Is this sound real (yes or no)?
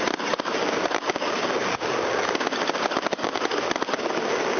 yes